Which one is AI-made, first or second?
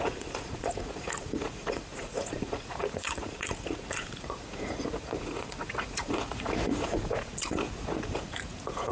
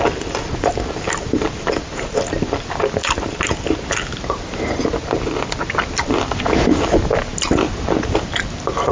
first